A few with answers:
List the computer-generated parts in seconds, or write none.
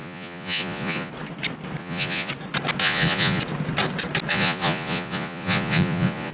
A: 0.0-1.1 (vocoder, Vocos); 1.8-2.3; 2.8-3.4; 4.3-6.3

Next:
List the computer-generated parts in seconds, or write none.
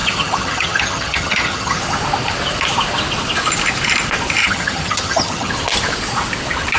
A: 0.0-1.8 (vocoder, HiFi-GAN); 4.4-5.5